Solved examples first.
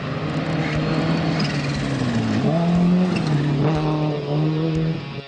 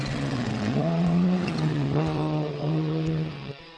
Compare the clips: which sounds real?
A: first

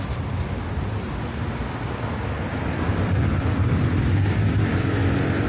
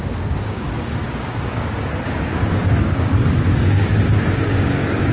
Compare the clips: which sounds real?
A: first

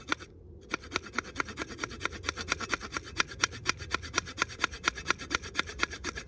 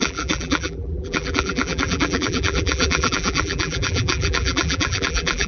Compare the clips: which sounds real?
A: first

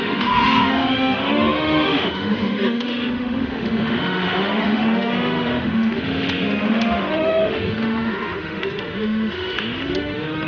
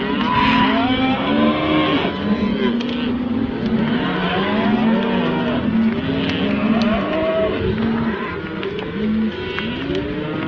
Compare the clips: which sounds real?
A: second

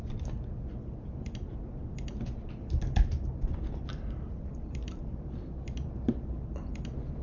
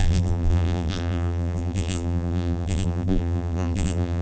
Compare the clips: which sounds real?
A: first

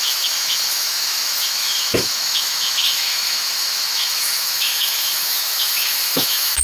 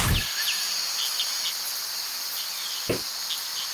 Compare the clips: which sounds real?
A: second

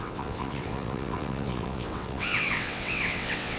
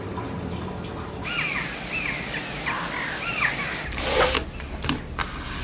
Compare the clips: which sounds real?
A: second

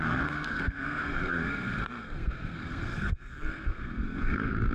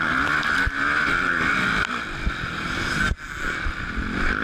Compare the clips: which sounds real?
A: second